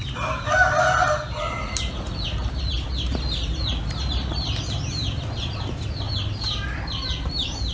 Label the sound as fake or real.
real